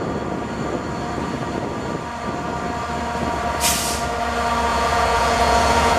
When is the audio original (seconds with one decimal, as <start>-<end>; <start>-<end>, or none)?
0.0-4.7